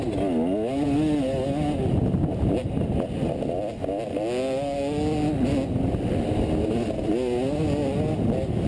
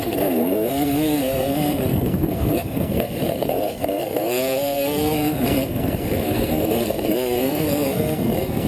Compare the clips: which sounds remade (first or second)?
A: second